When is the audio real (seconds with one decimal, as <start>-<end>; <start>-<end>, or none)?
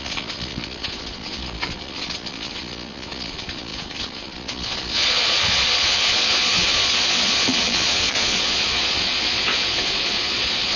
none